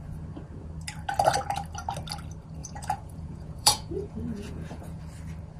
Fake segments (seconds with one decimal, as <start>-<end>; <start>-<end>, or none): 2.6-5.0